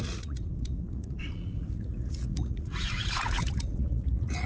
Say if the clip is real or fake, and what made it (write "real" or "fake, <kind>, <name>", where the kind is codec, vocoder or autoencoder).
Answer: fake, vocoder, Vocos